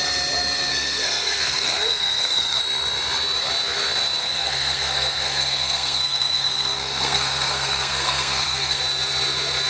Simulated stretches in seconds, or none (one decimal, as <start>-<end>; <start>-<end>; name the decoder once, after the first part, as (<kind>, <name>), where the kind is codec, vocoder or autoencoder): 0.7-2.6 (codec, SNAC); 4.2-8.8